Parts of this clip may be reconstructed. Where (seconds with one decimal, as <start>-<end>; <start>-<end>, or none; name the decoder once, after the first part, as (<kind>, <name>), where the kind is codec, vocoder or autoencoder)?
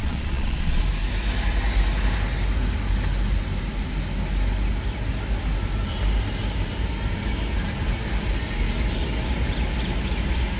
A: 0.0-0.8 (vocoder, Vocos)